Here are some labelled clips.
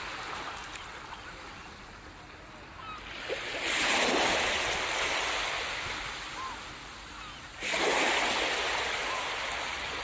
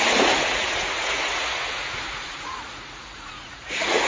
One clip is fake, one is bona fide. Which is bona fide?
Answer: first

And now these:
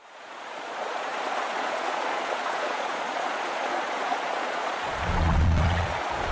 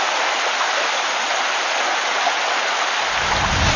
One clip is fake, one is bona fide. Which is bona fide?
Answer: second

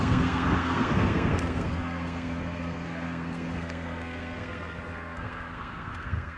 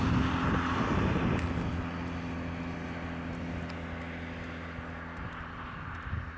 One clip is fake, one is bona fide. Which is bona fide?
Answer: second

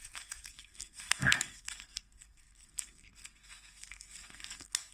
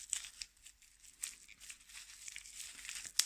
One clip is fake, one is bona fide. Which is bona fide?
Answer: second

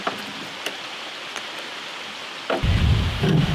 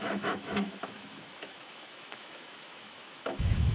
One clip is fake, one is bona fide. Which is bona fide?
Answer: first